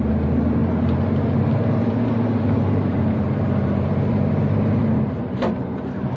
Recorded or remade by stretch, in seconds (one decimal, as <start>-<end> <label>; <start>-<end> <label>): 0.0-6.2 remade